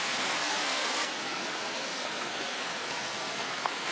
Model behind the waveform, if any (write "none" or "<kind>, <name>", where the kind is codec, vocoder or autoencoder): codec, SNAC